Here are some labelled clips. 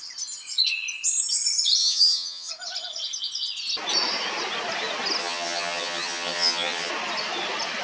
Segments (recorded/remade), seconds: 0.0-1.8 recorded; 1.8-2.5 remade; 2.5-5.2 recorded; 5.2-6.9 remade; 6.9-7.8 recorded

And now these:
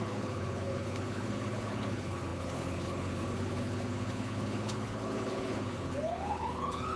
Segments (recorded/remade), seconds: 0.0-7.0 remade

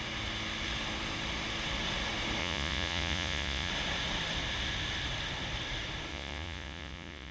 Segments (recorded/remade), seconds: 0.0-2.4 recorded; 2.4-3.7 remade; 3.7-6.1 recorded; 6.1-7.3 remade

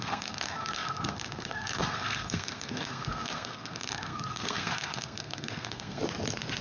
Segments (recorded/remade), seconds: 0.0-6.0 remade; 6.0-6.6 recorded

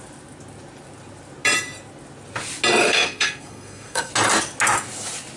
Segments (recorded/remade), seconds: 0.0-2.8 recorded; 2.8-4.1 remade; 4.1-5.4 recorded

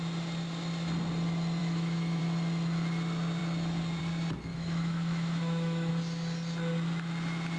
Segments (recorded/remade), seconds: 0.0-1.6 recorded; 1.6-2.2 remade; 2.2-4.5 recorded; 4.5-5.9 remade; 5.9-7.6 recorded